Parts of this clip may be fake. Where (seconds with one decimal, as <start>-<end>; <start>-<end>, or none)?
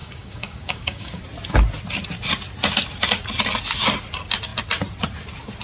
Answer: 0.0-1.2